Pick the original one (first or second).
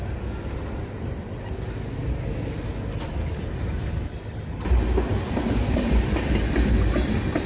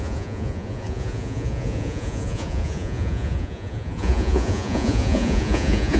first